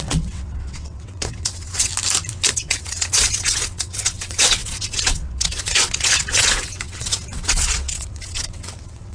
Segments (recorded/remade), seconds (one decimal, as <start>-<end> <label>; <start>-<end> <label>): 0.0-1.9 remade; 1.9-2.5 recorded; 2.5-9.1 remade

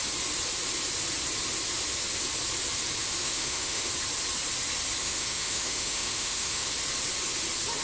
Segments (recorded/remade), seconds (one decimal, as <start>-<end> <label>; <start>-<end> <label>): 0.0-3.2 recorded; 3.2-3.9 remade; 3.9-5.0 recorded; 5.0-6.7 remade; 6.7-7.8 recorded

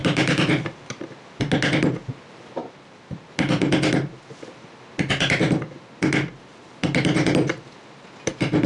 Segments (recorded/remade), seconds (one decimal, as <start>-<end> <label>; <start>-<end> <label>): 0.0-1.0 remade; 1.0-2.6 recorded; 2.6-3.3 remade; 3.3-6.5 recorded; 6.5-7.3 remade; 7.3-8.7 recorded

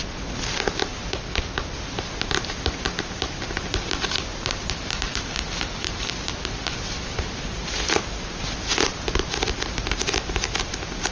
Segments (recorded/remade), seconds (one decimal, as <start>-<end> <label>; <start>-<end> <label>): 0.0-11.1 recorded

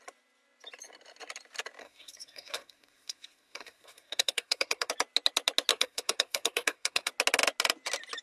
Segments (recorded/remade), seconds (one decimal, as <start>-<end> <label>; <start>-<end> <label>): 0.0-1.8 recorded; 1.8-4.9 remade; 4.9-5.7 recorded; 5.7-7.1 remade; 7.1-8.2 recorded